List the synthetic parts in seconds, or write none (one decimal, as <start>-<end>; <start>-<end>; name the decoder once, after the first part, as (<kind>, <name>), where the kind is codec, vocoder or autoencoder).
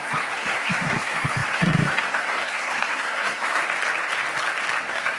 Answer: 0.0-3.6 (codec, SNAC); 4.8-5.2